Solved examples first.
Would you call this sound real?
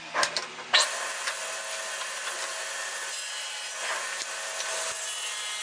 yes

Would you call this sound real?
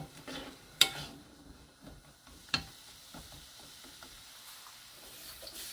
no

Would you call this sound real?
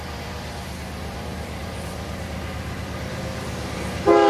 no